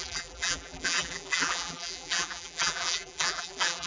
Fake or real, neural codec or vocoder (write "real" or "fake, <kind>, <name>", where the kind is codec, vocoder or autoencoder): fake, vocoder, BigVGAN v2